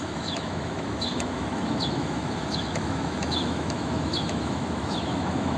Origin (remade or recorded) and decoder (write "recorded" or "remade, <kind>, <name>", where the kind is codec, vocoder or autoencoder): remade, autoencoder, DAC-VAE